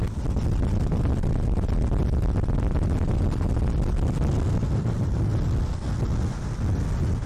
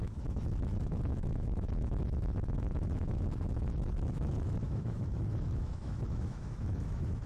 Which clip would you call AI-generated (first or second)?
second